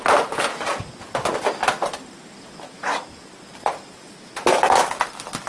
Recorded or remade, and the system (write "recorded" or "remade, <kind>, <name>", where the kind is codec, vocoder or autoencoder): recorded